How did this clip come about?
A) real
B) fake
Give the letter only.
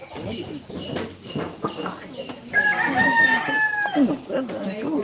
A